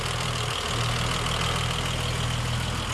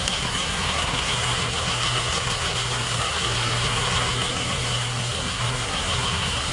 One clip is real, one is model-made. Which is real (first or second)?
first